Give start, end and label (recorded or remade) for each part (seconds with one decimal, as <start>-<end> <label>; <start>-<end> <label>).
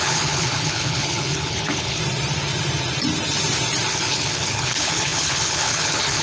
0.0-2.0 remade; 2.0-3.9 recorded; 3.9-6.2 remade